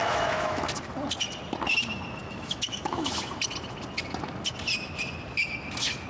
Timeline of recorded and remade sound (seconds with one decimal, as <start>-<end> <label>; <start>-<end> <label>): 0.0-0.6 remade; 0.6-2.2 recorded; 2.2-3.1 remade; 3.1-6.1 recorded